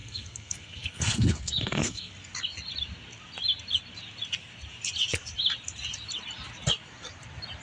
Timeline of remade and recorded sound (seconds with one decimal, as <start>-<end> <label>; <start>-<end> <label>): 0.0-2.1 remade; 2.1-7.6 recorded